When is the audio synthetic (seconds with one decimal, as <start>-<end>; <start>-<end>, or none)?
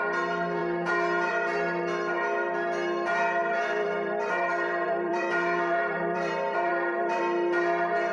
3.4-7.2